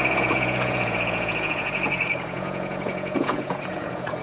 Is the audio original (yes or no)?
no